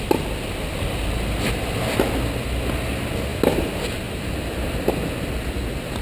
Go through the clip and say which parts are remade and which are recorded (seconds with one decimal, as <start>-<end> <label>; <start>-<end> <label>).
0.0-6.0 recorded

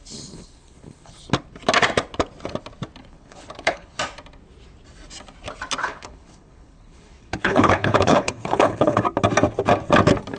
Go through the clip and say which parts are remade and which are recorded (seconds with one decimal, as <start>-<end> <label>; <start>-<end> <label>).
0.0-1.2 remade; 1.2-3.0 recorded; 3.0-4.0 remade; 4.0-5.8 recorded; 5.8-9.0 remade; 9.0-10.4 recorded

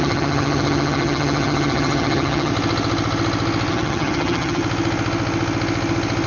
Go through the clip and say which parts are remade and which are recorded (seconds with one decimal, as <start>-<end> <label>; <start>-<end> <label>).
0.0-2.5 remade; 2.5-3.7 recorded; 3.7-4.6 remade; 4.6-6.3 recorded

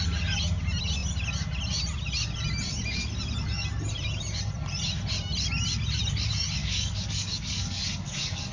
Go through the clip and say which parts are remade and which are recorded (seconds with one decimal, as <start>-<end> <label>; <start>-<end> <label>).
0.0-6.6 recorded; 6.6-8.5 remade

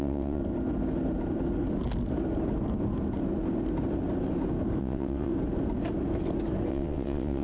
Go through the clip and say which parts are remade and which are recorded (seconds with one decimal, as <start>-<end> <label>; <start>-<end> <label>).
0.0-0.4 remade; 0.4-4.8 recorded; 4.8-5.3 remade; 5.3-6.7 recorded; 6.7-7.4 remade

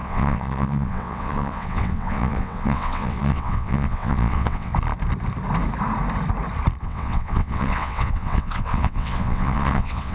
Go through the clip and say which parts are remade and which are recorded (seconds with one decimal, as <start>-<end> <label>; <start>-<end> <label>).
0.0-4.7 remade; 4.7-6.8 recorded; 6.8-10.1 remade